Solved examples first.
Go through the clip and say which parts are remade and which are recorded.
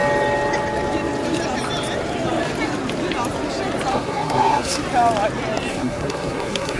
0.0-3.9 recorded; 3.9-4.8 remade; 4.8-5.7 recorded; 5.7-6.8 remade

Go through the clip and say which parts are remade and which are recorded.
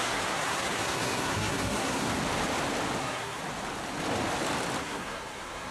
0.0-2.1 remade; 2.1-3.0 recorded; 3.0-3.4 remade; 3.4-4.8 recorded; 4.8-5.7 remade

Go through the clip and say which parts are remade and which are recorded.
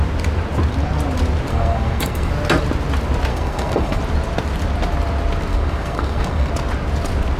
0.0-1.5 recorded; 1.5-2.3 remade; 2.3-3.3 recorded; 3.3-4.0 remade; 4.0-5.5 recorded; 5.5-6.5 remade; 6.5-7.4 recorded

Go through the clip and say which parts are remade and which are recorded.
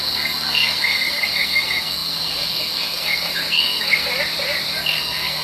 0.0-4.1 remade; 4.1-4.8 recorded; 4.8-5.4 remade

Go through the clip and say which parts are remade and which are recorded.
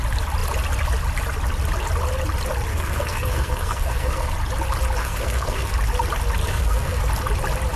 0.0-2.7 recorded; 2.7-4.3 remade; 4.3-5.0 recorded; 5.0-5.7 remade; 5.7-6.4 recorded; 6.4-7.0 remade; 7.0-7.8 recorded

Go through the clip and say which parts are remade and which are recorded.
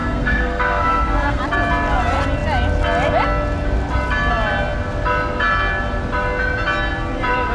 0.0-1.4 remade; 1.4-7.5 recorded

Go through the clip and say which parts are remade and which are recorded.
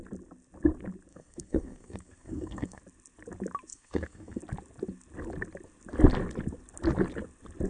0.0-1.1 recorded; 1.1-2.8 remade; 2.8-3.7 recorded; 3.7-4.4 remade; 4.4-7.7 recorded